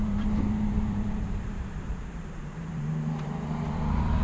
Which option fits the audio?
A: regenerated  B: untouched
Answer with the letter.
A